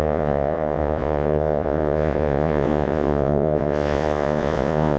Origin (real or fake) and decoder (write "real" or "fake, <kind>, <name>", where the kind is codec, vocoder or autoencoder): fake, vocoder, Vocos